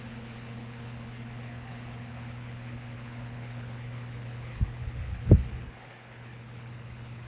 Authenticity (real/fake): fake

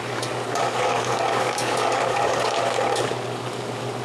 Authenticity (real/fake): fake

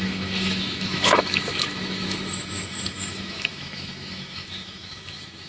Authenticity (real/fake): fake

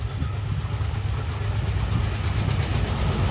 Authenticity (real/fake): real